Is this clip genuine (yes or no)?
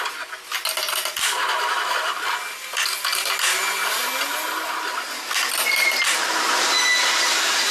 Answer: yes